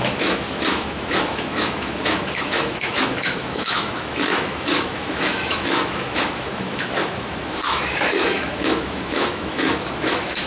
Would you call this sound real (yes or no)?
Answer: no